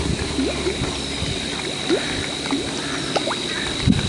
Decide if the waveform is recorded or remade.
recorded